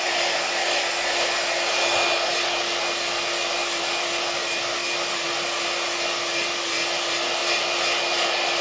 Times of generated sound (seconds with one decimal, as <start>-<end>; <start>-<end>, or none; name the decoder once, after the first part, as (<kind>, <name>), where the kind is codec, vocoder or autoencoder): none